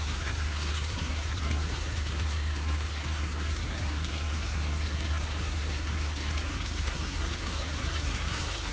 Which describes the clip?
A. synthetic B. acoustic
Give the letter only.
A